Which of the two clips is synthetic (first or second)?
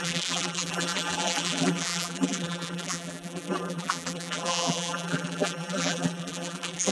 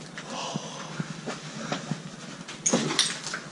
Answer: first